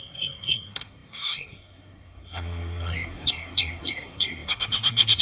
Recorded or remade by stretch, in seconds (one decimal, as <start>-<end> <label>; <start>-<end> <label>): 0.0-5.2 remade